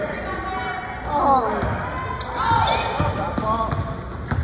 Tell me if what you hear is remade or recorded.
recorded